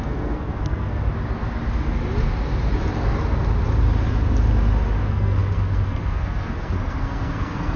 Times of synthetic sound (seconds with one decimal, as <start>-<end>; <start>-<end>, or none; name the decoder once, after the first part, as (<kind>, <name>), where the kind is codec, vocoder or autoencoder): 0.0-1.1 (codec, SNAC); 5.0-7.8

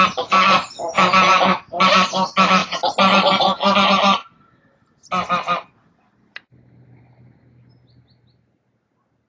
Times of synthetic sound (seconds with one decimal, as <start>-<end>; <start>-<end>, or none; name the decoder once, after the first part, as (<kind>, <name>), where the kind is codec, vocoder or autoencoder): none

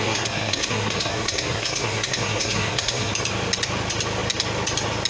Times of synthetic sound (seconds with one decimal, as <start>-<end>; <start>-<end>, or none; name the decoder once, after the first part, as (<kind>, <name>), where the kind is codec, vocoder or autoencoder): 0.0-3.1 (codec, SNAC)

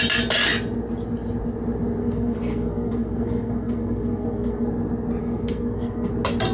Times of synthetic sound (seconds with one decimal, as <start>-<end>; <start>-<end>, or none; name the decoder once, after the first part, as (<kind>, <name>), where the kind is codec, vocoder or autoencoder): 2.0-4.7 (codec, SNAC); 5.2-6.1

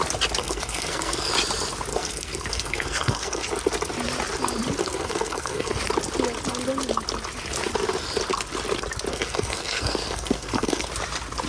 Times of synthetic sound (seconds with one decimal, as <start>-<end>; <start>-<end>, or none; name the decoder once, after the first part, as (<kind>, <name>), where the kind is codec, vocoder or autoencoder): 0.4-1.3 (codec, SNAC); 1.9-3.5; 4.8-5.8; 9.1-10.9